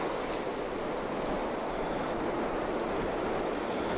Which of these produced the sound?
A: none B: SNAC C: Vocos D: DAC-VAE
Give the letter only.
A